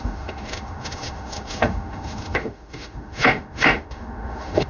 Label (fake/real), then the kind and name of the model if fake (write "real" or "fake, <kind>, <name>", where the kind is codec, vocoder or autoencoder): fake, autoencoder, DAC-VAE